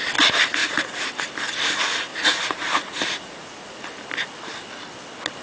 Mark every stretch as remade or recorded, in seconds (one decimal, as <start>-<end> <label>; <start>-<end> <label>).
0.0-0.6 recorded; 0.6-1.1 remade; 1.1-2.1 recorded; 2.1-3.8 remade; 3.8-5.4 recorded